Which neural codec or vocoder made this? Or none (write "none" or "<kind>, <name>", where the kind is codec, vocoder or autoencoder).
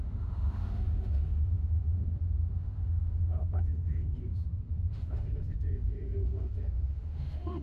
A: autoencoder, DAC-VAE